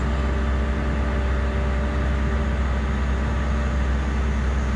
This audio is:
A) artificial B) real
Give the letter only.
B